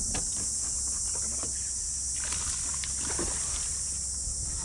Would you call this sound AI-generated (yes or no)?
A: no